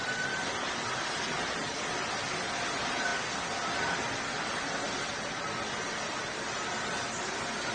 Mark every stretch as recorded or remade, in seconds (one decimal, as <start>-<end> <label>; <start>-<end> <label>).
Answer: 0.0-7.7 recorded

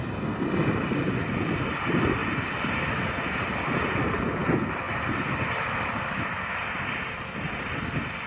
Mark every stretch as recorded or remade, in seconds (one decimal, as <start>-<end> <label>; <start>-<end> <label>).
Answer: 0.0-8.3 recorded

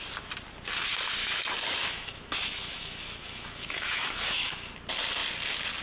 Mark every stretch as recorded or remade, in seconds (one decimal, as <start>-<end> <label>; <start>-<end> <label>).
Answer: 0.0-1.2 recorded; 1.2-4.7 remade; 4.7-5.8 recorded

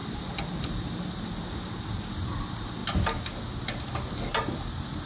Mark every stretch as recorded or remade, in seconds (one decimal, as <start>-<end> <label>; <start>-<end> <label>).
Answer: 0.0-5.1 recorded

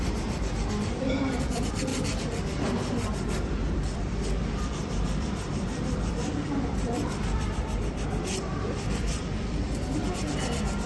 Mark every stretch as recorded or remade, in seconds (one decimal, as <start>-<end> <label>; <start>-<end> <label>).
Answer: 0.0-1.9 remade; 1.9-3.7 recorded; 3.7-10.9 remade

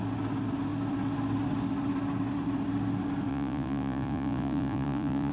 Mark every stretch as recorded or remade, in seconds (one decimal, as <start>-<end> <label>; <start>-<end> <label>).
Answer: 0.0-3.3 recorded; 3.3-5.3 remade